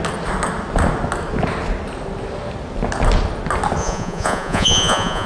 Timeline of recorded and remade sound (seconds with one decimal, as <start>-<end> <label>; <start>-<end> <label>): 0.0-3.8 recorded; 3.8-5.3 remade